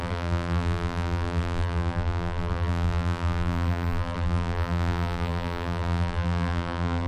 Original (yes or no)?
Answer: no